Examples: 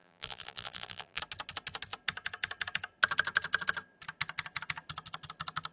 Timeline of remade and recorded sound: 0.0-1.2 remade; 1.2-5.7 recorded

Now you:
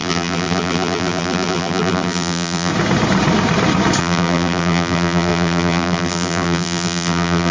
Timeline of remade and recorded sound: 0.0-2.7 remade; 2.7-4.0 recorded; 4.0-7.5 remade

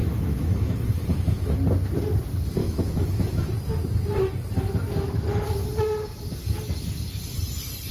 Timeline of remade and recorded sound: 0.0-1.5 remade; 1.5-2.6 recorded; 2.6-3.5 remade; 3.5-7.9 recorded

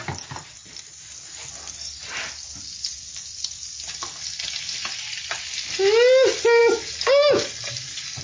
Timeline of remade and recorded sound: 0.0-8.2 recorded